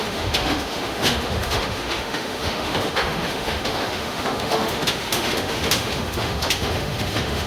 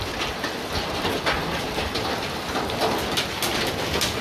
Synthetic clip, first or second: first